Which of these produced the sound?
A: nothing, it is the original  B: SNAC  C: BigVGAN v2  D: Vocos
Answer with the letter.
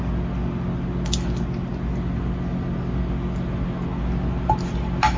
A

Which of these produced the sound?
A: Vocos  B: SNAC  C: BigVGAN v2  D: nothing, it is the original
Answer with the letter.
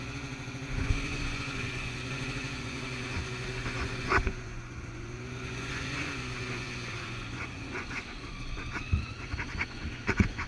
A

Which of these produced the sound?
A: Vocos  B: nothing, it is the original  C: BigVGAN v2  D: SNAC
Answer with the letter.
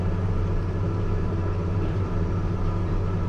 C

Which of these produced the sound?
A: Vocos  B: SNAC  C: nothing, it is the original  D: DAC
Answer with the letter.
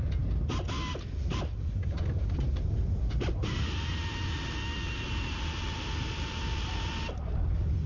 C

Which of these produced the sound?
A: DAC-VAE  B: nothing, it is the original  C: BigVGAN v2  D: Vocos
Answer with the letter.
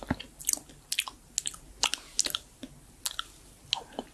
B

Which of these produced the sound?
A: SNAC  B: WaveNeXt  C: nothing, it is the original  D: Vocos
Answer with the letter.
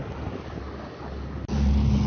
C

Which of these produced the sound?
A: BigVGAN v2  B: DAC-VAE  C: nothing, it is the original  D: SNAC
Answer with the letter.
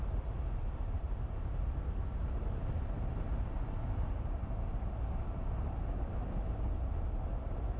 C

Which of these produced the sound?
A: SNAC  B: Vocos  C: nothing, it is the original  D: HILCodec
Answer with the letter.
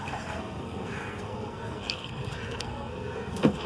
A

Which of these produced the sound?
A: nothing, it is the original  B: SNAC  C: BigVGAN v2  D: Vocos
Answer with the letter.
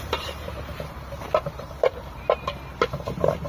C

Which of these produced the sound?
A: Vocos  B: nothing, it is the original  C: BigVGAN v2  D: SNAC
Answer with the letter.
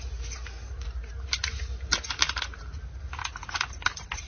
C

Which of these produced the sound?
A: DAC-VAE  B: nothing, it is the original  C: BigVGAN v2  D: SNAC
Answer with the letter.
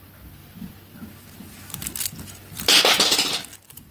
B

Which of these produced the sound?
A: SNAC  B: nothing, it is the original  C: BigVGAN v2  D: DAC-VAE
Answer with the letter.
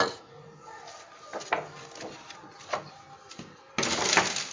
B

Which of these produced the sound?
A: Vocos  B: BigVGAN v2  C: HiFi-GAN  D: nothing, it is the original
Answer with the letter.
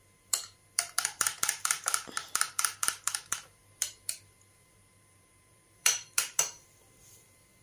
B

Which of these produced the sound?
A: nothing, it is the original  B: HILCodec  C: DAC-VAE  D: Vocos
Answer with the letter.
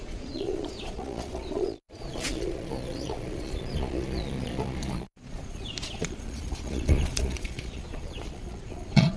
D